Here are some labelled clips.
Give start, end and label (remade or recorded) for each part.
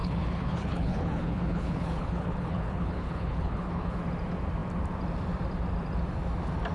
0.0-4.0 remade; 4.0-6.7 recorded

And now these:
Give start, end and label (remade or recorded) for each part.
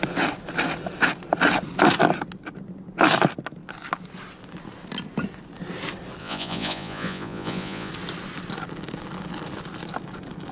0.0-6.2 recorded; 6.2-7.9 remade; 7.9-10.5 recorded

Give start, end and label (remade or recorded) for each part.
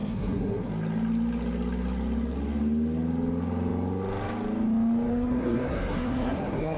0.0-0.7 remade; 0.7-5.1 recorded; 5.1-6.8 remade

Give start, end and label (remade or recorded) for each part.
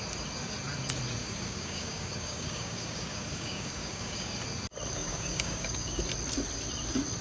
0.0-1.2 recorded; 1.2-4.3 remade; 4.3-5.0 recorded; 5.0-6.0 remade; 6.0-7.2 recorded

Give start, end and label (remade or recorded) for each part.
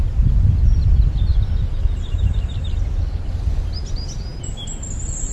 0.0-5.3 recorded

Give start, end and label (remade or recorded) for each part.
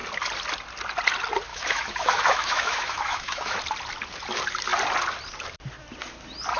0.0-1.5 recorded; 1.5-3.6 remade; 3.6-6.6 recorded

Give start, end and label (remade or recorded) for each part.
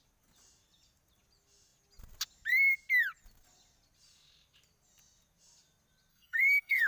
0.0-6.1 recorded; 6.1-6.9 remade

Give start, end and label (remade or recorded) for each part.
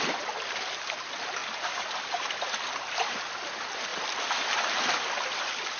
0.0-5.8 recorded